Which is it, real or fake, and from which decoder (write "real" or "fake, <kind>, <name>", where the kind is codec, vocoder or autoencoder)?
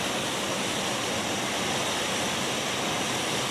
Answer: real